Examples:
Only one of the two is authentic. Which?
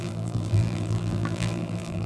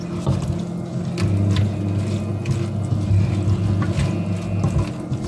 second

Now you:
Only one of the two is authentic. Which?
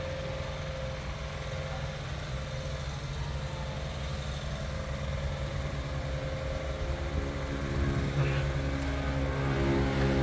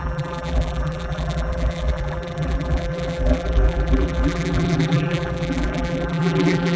first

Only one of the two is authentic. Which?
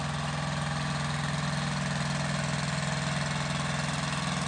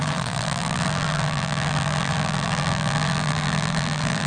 first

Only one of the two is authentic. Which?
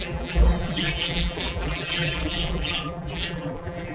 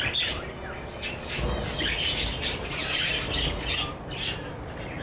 second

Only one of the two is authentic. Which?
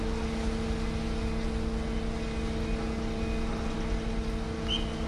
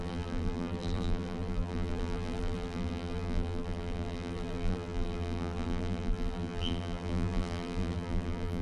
first